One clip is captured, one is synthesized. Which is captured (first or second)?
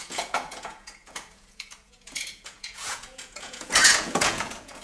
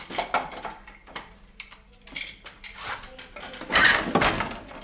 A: second